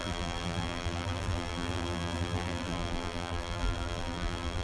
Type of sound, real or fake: fake